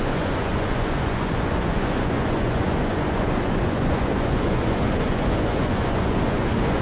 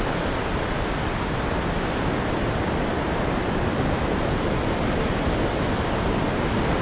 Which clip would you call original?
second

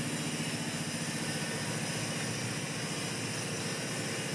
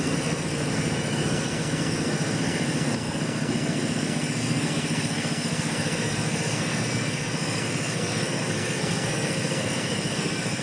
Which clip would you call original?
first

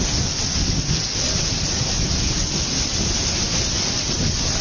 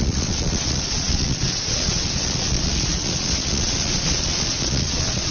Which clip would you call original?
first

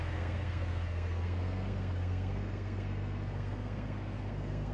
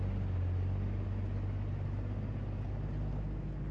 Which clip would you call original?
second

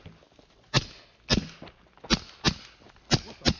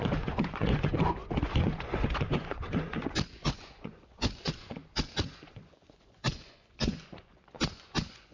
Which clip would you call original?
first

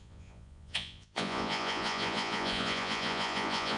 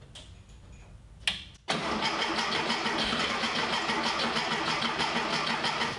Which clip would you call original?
second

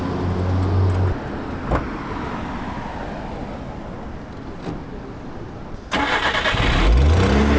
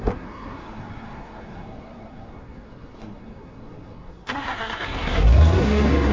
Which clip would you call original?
first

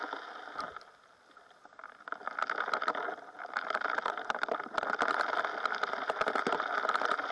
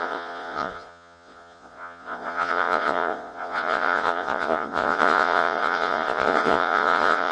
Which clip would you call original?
first